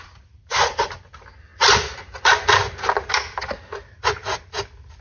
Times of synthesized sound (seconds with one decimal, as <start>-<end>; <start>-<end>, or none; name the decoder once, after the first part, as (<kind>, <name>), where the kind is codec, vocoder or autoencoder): 0.0-1.5 (vocoder, BigVGAN v2); 4.5-5.0